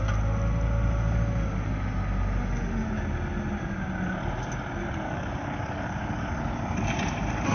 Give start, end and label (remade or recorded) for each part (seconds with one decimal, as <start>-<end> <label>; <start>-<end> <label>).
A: 0.0-4.8 recorded; 4.8-6.3 remade; 6.3-7.5 recorded